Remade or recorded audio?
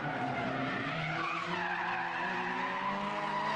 recorded